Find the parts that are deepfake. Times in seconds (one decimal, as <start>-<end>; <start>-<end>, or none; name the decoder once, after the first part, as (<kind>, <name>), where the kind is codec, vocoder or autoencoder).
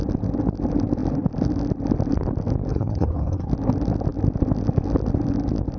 2.7-3.5 (codec, SNAC)